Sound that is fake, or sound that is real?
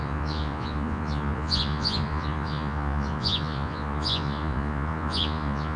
fake